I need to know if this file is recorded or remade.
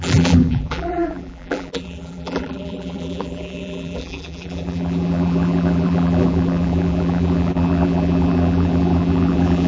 remade